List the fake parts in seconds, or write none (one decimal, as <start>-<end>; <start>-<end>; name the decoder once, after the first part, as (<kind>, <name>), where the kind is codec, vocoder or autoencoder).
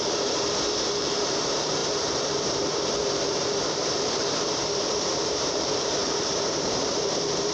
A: 0.0-7.5 (vocoder, BigVGAN v2)